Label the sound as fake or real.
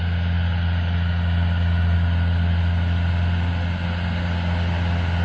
real